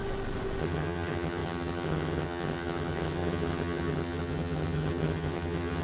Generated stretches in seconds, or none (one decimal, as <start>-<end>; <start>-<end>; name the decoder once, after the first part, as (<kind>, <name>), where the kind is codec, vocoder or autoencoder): 0.6-5.8 (vocoder, HiFi-GAN)